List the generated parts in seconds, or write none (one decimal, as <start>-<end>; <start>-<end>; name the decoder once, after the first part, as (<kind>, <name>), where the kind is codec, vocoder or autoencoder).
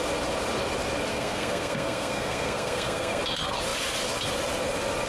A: 1.1-3.2 (codec, SNAC)